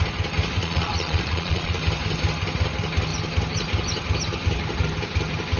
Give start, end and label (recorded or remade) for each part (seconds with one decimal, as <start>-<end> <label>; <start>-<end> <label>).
0.0-0.6 recorded; 0.6-1.8 remade; 1.8-5.6 recorded